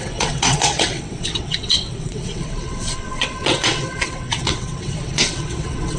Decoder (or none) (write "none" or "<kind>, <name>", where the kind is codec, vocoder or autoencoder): vocoder, WaveNeXt